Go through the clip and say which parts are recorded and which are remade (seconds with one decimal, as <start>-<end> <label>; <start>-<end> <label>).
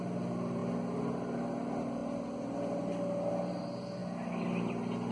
0.0-5.1 recorded